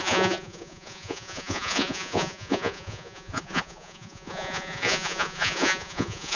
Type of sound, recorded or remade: remade